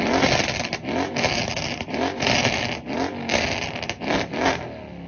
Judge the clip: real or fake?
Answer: real